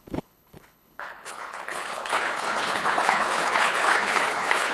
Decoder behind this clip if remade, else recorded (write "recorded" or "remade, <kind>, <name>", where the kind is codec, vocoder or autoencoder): remade, codec, HILCodec